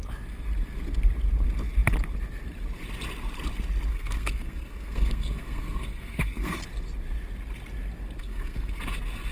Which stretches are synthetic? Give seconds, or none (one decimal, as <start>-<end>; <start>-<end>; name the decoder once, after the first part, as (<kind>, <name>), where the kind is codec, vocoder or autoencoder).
3.9-6.6 (codec, SNAC); 8.2-8.8